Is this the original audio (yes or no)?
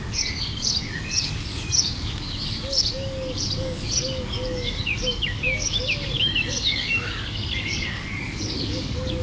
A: no